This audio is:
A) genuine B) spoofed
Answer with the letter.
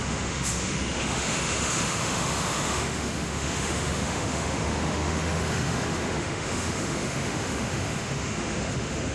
B